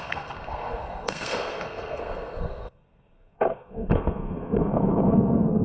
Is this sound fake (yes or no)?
yes